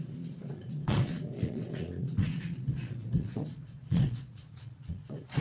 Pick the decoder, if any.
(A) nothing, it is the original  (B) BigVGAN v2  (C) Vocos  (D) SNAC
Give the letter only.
C